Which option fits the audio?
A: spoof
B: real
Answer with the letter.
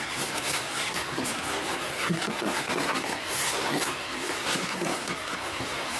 A